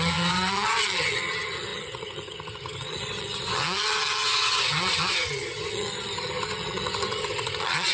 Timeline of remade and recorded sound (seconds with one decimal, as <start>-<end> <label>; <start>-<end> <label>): 0.0-7.9 remade